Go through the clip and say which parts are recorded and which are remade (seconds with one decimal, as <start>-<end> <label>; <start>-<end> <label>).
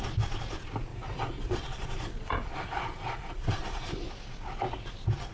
0.0-0.9 recorded; 0.9-4.1 remade; 4.1-5.3 recorded